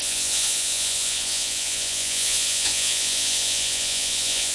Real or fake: fake